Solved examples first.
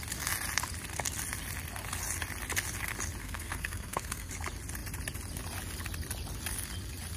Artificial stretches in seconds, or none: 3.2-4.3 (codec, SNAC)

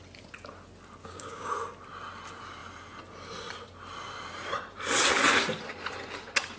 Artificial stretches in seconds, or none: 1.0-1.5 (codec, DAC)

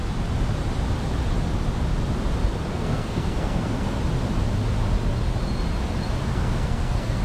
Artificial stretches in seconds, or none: 2.7-4.0 (codec, SNAC); 6.3-7.2

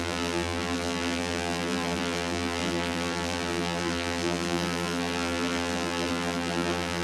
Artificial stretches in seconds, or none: 0.0-7.0 (vocoder, BigVGAN v2)

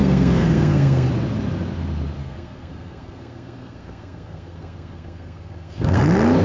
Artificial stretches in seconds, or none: 0.0-1.1 (codec, SNAC); 2.2-6.0